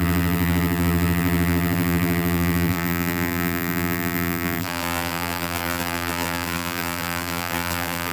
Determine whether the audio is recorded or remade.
remade